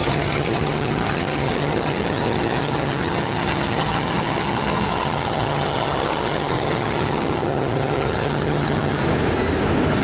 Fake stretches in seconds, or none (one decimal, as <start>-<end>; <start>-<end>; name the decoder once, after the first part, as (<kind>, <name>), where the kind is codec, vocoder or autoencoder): 0.0-9.0 (vocoder, HiFi-GAN)